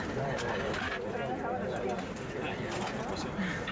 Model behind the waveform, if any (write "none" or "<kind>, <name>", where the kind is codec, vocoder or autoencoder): none